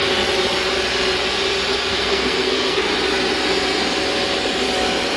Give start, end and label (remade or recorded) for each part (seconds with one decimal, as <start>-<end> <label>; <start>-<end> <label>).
0.0-1.9 recorded; 1.9-2.8 remade; 2.8-5.2 recorded